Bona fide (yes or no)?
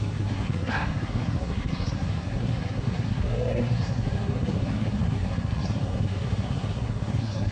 no